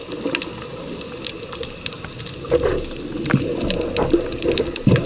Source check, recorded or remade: recorded